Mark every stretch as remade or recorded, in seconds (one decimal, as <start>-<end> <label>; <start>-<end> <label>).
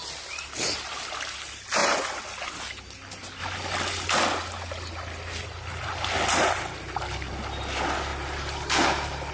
0.0-8.1 recorded; 8.1-9.3 remade